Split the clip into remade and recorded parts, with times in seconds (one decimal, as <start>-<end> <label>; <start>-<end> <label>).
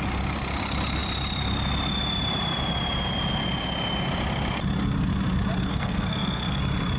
0.0-5.7 recorded; 5.7-6.6 remade; 6.6-7.0 recorded